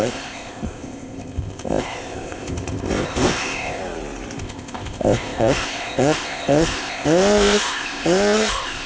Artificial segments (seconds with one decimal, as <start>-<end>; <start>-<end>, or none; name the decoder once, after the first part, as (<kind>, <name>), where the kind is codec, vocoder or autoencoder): 0.0-3.8 (codec, ZipCodec); 4.4-8.9